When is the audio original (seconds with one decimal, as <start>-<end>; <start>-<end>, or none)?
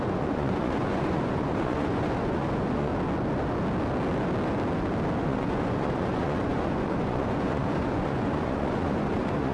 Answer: 2.9-5.2